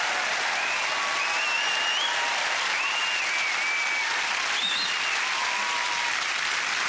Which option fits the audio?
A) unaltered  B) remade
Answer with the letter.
A